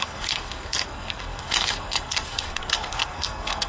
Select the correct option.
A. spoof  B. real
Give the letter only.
A